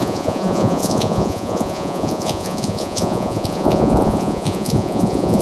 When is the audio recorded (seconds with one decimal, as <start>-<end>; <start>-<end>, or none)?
none